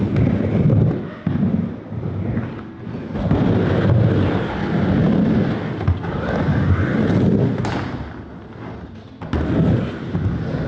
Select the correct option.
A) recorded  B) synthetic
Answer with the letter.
A